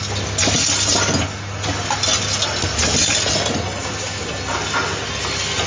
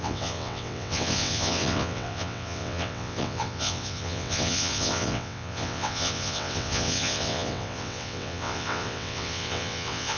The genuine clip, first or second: first